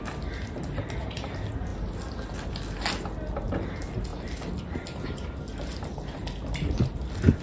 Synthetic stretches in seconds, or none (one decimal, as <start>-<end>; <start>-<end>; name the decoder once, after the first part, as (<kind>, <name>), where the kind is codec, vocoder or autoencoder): none